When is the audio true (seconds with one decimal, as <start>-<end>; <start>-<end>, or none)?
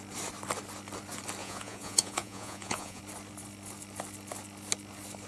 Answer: 0.0-1.4; 3.0-5.3